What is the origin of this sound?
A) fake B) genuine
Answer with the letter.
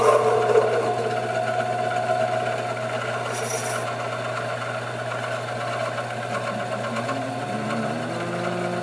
B